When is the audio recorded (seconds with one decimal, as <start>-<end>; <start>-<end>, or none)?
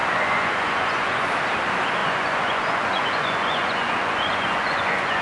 1.3-2.0